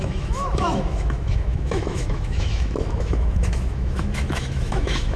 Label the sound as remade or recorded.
remade